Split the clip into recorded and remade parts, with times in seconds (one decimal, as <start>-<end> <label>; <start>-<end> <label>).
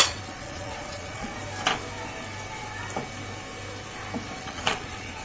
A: 0.0-1.3 remade; 1.3-4.4 recorded; 4.4-5.2 remade